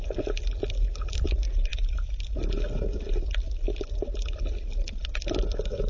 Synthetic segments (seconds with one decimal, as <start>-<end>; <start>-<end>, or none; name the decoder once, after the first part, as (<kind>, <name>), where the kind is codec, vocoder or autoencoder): none